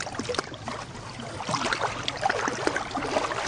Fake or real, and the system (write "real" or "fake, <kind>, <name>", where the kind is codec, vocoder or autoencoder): real